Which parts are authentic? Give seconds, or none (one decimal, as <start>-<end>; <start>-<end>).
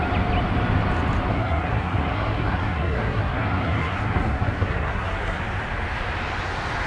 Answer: 0.0-1.3; 5.4-6.9